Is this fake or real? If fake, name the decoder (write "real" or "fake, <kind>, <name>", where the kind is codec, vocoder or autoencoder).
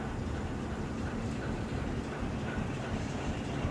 real